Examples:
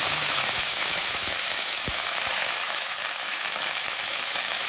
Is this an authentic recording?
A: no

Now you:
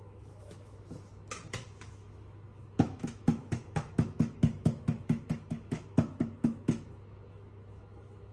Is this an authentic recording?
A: no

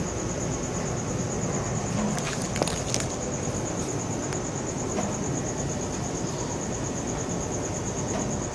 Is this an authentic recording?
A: yes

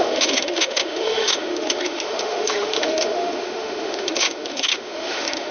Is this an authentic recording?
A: no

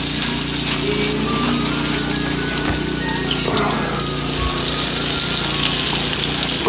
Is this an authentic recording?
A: yes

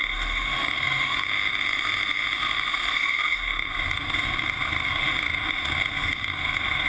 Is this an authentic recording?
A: no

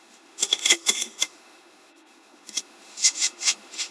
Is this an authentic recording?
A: no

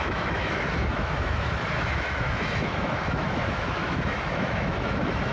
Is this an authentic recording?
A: no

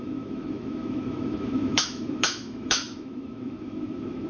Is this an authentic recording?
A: no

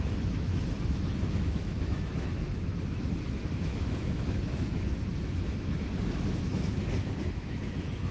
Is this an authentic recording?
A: no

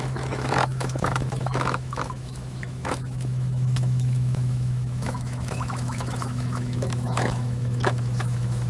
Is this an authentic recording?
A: no